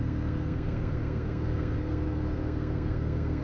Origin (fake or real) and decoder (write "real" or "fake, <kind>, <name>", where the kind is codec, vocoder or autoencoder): fake, codec, SNAC